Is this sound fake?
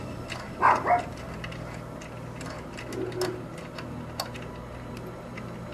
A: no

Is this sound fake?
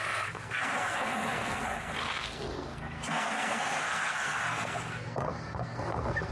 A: yes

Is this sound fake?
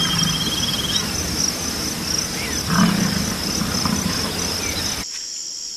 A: no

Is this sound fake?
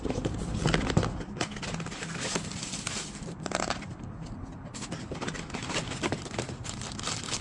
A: no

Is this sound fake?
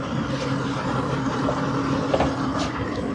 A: no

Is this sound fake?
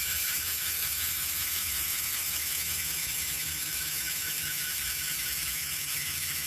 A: yes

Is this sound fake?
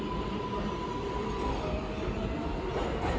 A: no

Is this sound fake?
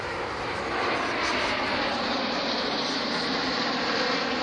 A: no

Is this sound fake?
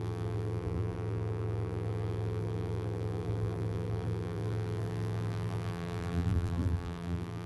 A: yes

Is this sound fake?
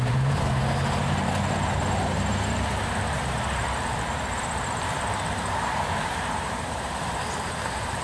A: yes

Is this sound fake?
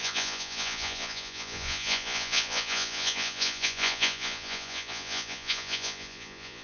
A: yes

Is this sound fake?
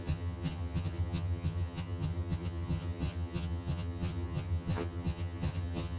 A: yes